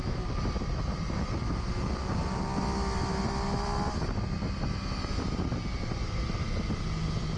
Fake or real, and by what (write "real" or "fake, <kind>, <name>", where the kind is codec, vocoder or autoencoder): real